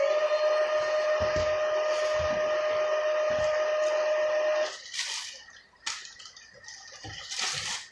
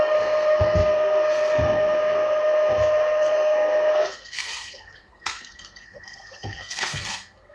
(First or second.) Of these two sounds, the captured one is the first